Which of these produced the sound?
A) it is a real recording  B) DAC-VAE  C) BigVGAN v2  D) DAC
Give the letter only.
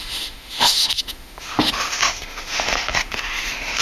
B